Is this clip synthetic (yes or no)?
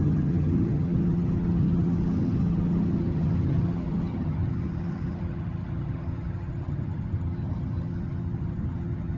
yes